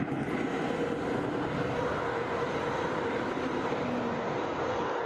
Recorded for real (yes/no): yes